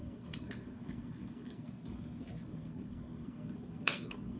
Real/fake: fake